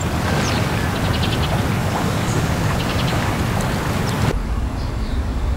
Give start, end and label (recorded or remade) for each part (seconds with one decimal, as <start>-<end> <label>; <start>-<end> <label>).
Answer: 0.0-1.8 recorded; 1.8-3.3 remade; 3.3-4.4 recorded; 4.4-5.6 remade